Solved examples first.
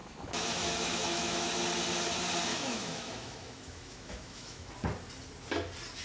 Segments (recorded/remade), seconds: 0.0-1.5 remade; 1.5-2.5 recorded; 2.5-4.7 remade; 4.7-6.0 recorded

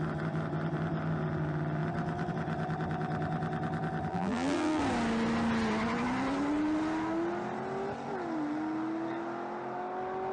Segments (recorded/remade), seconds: 0.0-4.1 recorded; 4.1-4.8 remade; 4.8-10.3 recorded

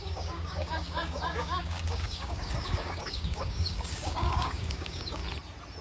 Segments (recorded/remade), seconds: 0.0-5.2 remade; 5.2-5.8 recorded

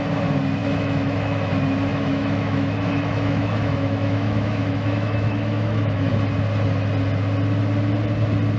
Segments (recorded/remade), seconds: 0.0-0.6 recorded; 0.6-1.5 remade; 1.5-1.9 recorded; 1.9-6.1 remade; 6.1-8.6 recorded